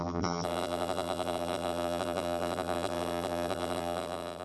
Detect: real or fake fake